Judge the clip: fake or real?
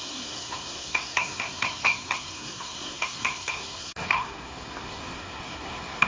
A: fake